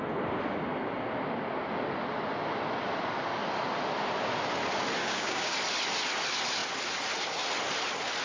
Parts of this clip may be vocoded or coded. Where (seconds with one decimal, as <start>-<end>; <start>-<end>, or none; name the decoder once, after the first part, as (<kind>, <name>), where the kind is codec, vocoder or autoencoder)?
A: 5.0-5.5 (codec, DAC)